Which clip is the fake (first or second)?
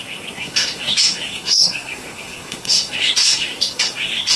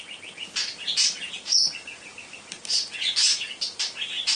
first